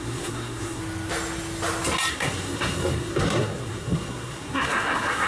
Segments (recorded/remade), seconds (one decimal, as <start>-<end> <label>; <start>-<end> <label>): 0.0-0.8 remade; 0.8-2.1 recorded; 2.1-5.3 remade